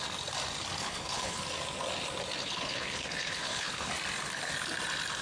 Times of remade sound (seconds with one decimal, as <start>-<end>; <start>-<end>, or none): 0.8-1.4; 2.4-3.9

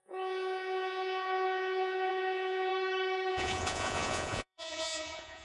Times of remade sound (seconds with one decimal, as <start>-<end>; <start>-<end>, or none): 0.0-2.7; 3.3-5.4

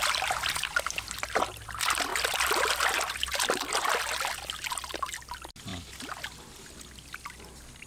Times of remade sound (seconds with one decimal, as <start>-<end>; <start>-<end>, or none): none

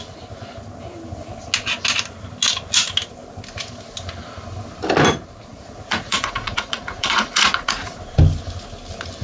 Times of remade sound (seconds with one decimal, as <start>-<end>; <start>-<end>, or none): 5.5-8.2

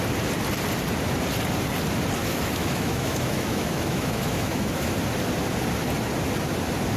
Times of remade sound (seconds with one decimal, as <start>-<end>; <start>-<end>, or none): 2.2-4.9

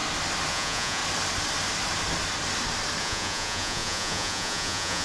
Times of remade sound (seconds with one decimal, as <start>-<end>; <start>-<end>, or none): 0.5-1.0; 3.0-5.0

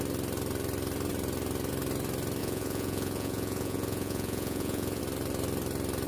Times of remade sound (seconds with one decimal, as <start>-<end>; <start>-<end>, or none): 2.4-5.0

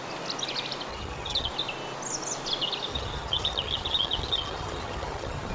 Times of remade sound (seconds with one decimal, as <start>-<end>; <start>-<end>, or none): 0.9-1.5; 2.9-5.5